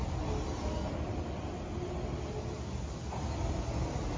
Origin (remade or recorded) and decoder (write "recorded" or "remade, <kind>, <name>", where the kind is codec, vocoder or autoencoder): recorded